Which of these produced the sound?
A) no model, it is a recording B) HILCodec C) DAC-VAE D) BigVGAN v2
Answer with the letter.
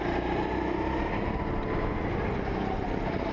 A